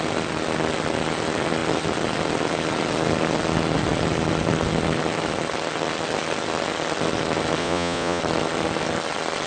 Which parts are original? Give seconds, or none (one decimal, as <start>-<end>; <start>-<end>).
0.0-7.6; 8.2-9.5